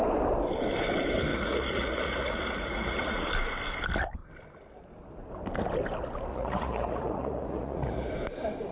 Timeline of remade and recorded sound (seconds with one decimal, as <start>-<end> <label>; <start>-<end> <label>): 0.0-1.3 recorded; 1.3-3.3 remade; 3.3-6.3 recorded; 6.3-8.1 remade; 8.1-8.7 recorded